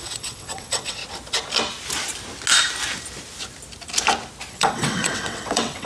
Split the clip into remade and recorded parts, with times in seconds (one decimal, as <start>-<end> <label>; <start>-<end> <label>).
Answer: 0.0-1.0 remade; 1.0-4.5 recorded; 4.5-5.9 remade